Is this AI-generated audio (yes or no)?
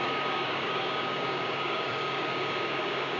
yes